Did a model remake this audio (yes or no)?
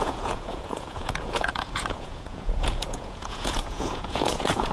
yes